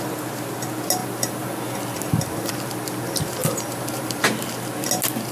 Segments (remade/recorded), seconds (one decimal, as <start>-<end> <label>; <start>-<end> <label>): 0.0-1.0 recorded; 1.0-2.5 remade; 2.5-3.4 recorded; 3.4-4.2 remade; 4.2-5.3 recorded